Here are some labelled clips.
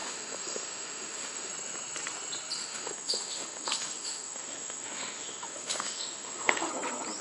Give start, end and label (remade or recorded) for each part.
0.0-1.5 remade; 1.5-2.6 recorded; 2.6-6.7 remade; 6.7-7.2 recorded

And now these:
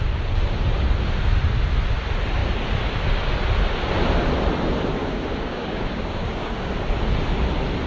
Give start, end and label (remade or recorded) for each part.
0.0-5.0 recorded; 5.0-6.7 remade; 6.7-7.9 recorded

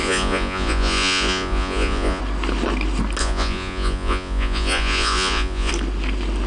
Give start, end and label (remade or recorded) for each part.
0.0-2.2 remade; 2.2-3.2 recorded; 3.2-5.7 remade; 5.7-6.5 recorded

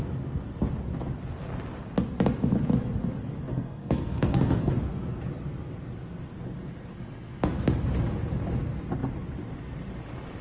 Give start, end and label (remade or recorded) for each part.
0.0-3.5 recorded; 3.5-4.7 remade; 4.7-10.4 recorded

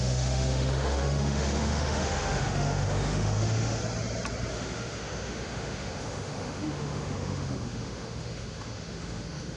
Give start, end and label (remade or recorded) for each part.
0.0-3.8 remade; 3.8-4.5 recorded; 4.5-9.6 remade